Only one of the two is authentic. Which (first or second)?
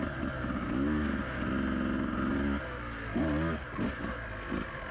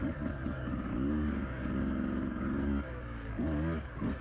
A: first